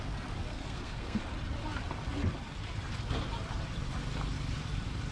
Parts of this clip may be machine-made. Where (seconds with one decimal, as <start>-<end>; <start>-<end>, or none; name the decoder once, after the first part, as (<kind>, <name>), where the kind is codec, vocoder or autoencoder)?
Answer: 0.5-1.2 (codec, SNAC)